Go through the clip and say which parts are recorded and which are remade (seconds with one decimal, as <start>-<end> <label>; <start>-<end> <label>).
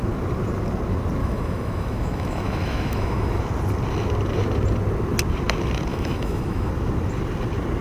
0.0-1.2 recorded; 1.2-3.4 remade; 3.4-5.9 recorded; 5.9-6.7 remade; 6.7-7.8 recorded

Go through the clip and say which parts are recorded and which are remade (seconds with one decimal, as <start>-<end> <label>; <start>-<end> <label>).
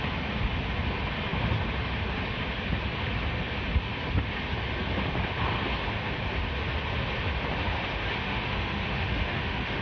0.0-8.2 recorded; 8.2-9.8 remade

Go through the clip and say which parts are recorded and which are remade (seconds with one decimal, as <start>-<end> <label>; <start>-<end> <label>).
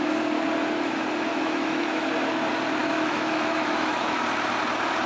0.0-1.3 recorded; 1.3-2.1 remade; 2.1-2.8 recorded; 2.8-4.2 remade; 4.2-5.1 recorded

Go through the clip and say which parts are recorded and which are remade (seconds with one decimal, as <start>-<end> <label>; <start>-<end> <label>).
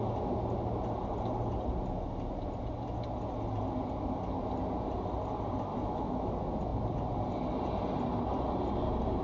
0.0-5.7 recorded; 5.7-6.3 remade; 6.3-9.2 recorded